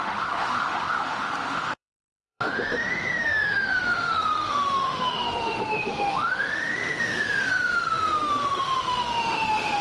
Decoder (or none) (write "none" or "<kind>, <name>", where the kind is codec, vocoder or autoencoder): autoencoder, DAC-VAE